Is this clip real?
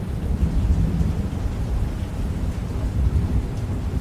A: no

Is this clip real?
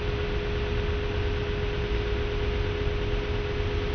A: yes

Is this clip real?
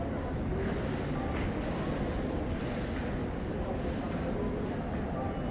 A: yes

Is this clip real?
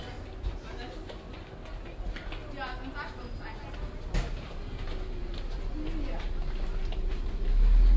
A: yes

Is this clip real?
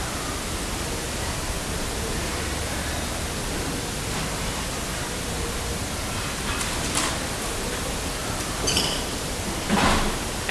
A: yes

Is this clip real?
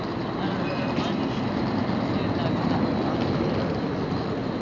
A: yes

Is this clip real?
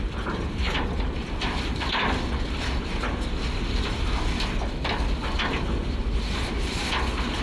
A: yes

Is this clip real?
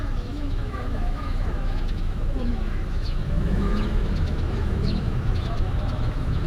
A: no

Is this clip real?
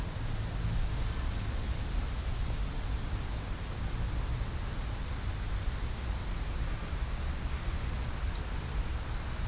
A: yes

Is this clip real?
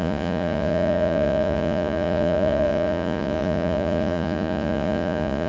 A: no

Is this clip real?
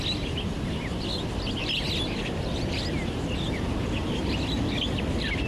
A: yes